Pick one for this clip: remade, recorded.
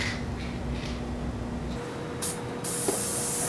recorded